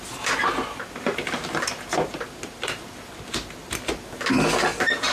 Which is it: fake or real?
real